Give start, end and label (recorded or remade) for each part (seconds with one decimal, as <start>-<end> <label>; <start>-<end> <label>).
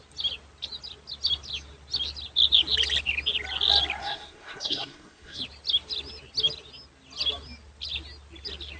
0.0-4.0 recorded; 4.0-5.4 remade; 5.4-8.8 recorded